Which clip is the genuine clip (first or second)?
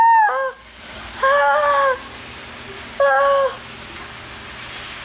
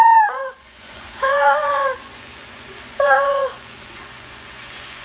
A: first